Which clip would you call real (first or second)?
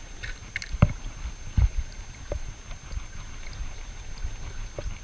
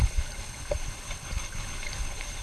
first